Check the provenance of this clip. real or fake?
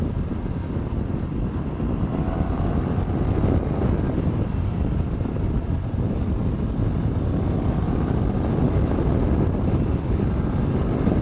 real